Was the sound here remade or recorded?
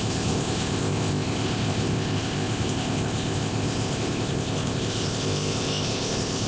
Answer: remade